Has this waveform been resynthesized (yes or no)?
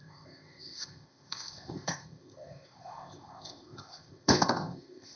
yes